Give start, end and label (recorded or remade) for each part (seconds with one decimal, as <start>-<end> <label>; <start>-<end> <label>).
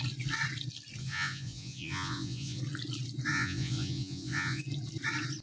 0.0-1.0 recorded; 1.0-2.6 remade; 2.6-3.3 recorded; 3.3-4.6 remade; 4.6-5.4 recorded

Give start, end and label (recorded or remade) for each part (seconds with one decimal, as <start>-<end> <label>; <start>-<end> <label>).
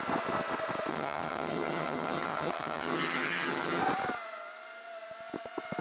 0.0-0.9 recorded; 0.9-3.8 remade; 3.8-5.8 recorded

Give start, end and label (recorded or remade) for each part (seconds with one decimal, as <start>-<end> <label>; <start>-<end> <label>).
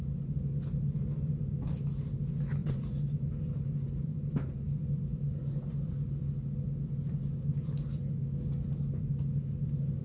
0.0-2.6 recorded; 2.6-3.2 remade; 3.2-4.1 recorded; 4.1-4.8 remade; 4.8-10.0 recorded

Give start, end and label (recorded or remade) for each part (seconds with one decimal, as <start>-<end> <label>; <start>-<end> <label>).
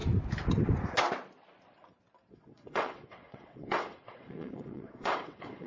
0.0-2.3 recorded; 2.3-5.7 remade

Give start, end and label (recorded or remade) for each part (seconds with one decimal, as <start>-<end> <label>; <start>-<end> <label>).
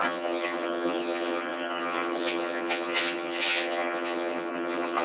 0.0-5.0 remade